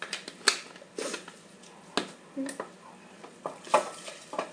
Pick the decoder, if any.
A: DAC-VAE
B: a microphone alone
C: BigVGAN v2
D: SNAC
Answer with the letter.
B